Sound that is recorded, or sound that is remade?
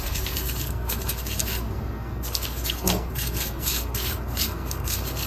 remade